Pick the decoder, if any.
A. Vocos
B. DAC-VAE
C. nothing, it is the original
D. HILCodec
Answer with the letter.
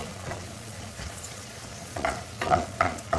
A